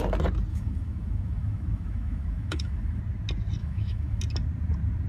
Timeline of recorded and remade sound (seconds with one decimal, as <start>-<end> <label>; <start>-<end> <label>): 0.0-0.5 recorded; 0.5-3.0 remade; 3.0-3.6 recorded; 3.6-4.2 remade; 4.2-5.1 recorded